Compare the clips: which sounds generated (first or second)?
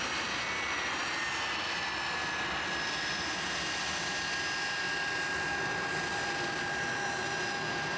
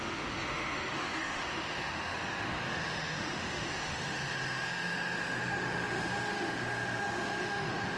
second